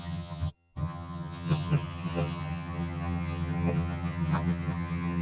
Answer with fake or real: fake